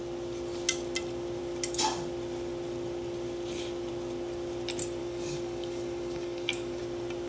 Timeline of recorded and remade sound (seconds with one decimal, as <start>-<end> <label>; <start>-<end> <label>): 0.0-5.0 recorded; 5.0-6.8 remade; 6.8-7.3 recorded